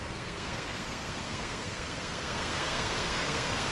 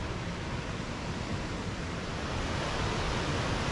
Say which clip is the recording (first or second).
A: second